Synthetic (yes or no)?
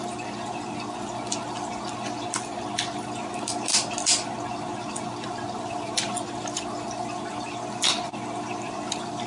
no